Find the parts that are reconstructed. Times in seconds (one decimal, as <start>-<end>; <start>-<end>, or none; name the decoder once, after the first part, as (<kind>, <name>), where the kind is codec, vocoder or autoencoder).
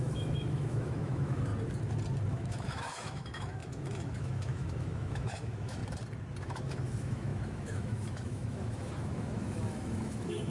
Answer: 0.0-1.5 (autoencoder, DAC-VAE); 2.3-5.8; 6.4-10.5